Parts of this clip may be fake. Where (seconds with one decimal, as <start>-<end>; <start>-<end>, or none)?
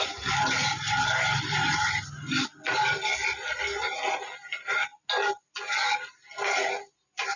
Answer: none